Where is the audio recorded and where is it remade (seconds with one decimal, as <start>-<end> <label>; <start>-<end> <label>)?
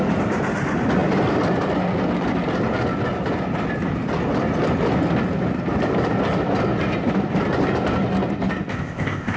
0.0-8.7 recorded; 8.7-9.4 remade